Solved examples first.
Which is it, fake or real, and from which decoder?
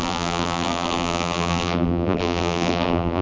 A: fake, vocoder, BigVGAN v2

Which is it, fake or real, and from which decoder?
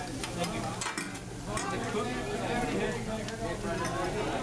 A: real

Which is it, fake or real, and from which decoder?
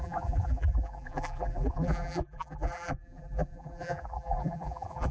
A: fake, vocoder, BigVGAN v2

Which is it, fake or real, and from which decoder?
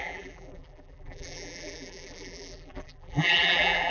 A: fake, vocoder, BigVGAN v2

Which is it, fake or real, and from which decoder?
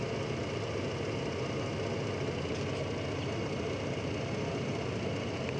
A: real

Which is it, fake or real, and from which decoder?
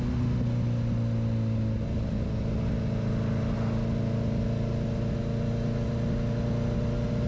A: real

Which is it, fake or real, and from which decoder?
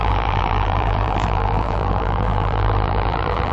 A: fake, vocoder, BigVGAN v2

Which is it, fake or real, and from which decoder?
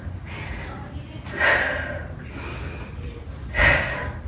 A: real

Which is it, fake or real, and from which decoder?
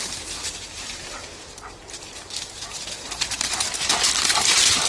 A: fake, vocoder, BigVGAN v2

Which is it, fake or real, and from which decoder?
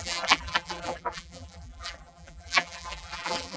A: fake, vocoder, BigVGAN v2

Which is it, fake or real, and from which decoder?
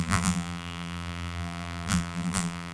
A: fake, vocoder, BigVGAN v2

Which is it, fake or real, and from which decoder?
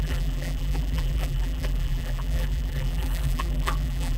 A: fake, vocoder, BigVGAN v2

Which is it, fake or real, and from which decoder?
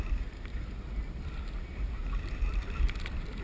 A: fake, vocoder, BigVGAN v2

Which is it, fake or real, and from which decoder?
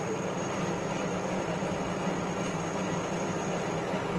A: real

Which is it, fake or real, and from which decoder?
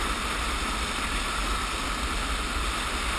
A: real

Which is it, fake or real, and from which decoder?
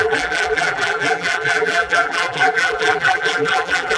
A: fake, vocoder, BigVGAN v2